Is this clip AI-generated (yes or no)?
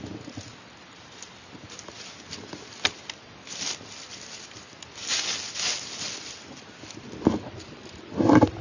no